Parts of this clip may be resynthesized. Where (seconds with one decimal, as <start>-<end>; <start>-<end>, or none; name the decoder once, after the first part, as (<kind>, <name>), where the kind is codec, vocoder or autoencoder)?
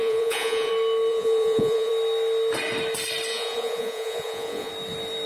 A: 0.0-0.7 (vocoder, Vocos); 1.1-1.9; 3.3-4.7